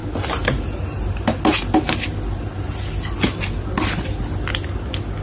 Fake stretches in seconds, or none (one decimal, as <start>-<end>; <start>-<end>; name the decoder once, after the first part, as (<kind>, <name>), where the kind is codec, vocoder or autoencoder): 0.0-1.4 (vocoder, BigVGAN v2)